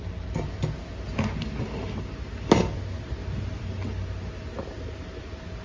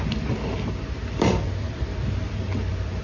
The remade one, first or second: second